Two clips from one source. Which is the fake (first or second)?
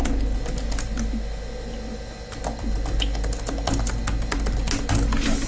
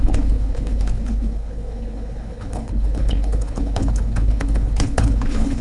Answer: second